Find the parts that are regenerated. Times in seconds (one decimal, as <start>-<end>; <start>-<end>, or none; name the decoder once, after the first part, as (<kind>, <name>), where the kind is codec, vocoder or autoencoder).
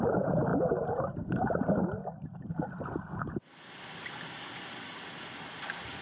none